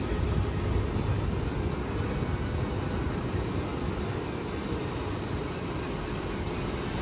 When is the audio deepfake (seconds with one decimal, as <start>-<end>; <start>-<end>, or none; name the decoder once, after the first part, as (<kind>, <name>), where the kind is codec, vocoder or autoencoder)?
none